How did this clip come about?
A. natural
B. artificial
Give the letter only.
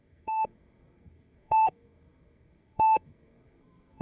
B